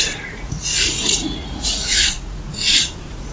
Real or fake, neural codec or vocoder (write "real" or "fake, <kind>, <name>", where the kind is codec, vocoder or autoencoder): fake, vocoder, Vocos